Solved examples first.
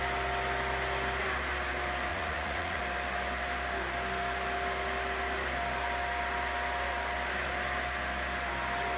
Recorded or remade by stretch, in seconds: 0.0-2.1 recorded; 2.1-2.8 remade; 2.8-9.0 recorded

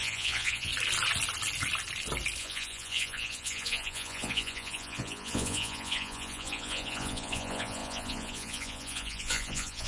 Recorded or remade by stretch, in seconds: 0.0-0.7 remade; 0.7-2.4 recorded; 2.4-9.9 remade

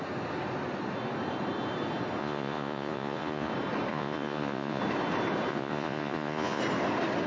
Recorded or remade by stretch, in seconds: 0.0-2.2 recorded; 2.2-3.5 remade; 3.5-3.9 recorded; 3.9-4.8 remade; 4.8-5.5 recorded; 5.5-6.6 remade; 6.6-7.3 recorded

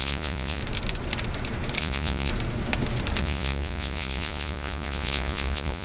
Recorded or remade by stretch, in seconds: 0.0-0.6 remade; 0.6-1.8 recorded; 1.8-2.3 remade; 2.3-3.2 recorded; 3.2-5.8 remade